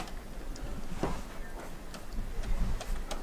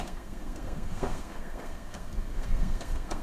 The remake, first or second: second